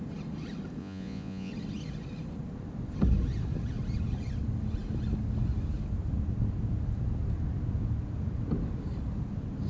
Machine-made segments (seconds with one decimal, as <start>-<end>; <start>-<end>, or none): 0.8-1.5